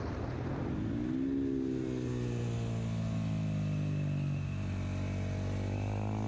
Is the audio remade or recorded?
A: recorded